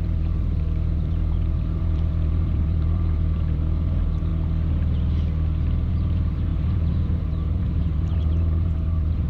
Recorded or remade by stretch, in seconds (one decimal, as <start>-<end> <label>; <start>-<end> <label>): 0.0-4.3 remade; 4.3-5.9 recorded; 5.9-9.3 remade